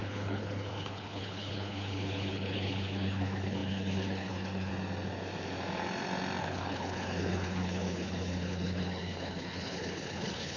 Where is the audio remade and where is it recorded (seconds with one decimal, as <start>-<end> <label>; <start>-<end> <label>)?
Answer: 0.0-4.7 remade; 4.7-6.4 recorded; 6.4-10.6 remade